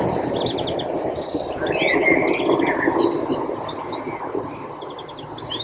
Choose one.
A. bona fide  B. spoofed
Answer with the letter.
A